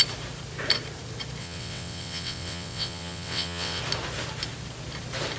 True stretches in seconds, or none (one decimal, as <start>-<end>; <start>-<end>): 0.0-1.4; 3.8-5.4